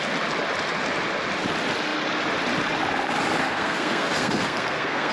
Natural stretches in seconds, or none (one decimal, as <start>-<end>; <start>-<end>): 0.0-3.4